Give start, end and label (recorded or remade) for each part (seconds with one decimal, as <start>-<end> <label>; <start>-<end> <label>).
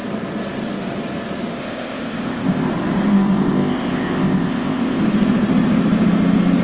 0.0-1.6 recorded; 1.6-2.7 remade; 2.7-3.1 recorded; 3.1-5.0 remade; 5.0-6.6 recorded